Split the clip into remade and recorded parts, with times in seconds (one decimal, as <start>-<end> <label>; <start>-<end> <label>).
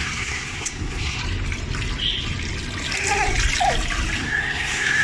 0.0-1.2 remade; 1.2-4.2 recorded; 4.2-5.0 remade